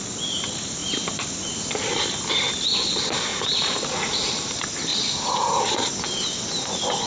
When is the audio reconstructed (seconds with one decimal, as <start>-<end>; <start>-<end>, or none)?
3.3-4.3; 4.9-5.6